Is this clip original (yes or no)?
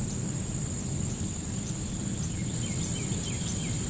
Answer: yes